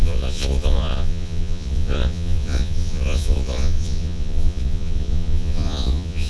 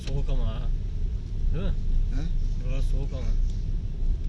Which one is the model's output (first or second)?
first